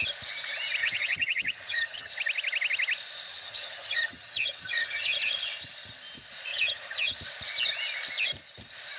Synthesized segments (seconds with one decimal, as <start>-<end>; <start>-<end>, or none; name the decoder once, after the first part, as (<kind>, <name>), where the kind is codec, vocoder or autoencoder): 0.8-2.1 (vocoder, HiFi-GAN); 3.3-5.1; 6.5-7.2